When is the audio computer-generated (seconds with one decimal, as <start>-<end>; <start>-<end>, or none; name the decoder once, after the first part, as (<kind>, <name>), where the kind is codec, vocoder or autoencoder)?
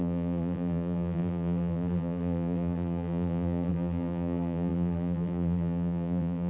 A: 0.0-6.5 (vocoder, BigVGAN v2)